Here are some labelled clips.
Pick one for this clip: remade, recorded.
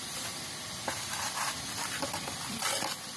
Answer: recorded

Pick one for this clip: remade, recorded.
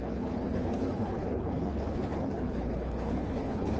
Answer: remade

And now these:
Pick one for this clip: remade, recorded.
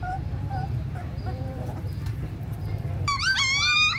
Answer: remade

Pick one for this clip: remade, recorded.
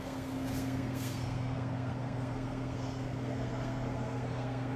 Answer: remade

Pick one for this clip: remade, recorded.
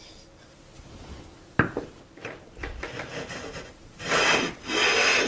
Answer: recorded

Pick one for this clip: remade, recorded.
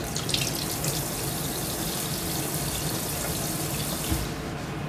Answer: recorded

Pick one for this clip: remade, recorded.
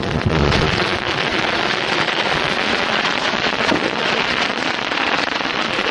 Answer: remade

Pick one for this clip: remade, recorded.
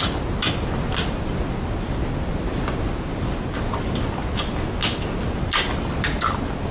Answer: recorded